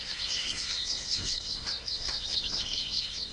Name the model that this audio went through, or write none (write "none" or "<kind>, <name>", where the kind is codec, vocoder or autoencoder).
codec, SNAC